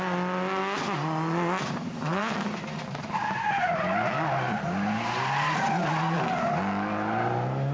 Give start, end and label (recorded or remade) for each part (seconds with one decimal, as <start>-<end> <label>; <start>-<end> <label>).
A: 0.0-7.7 recorded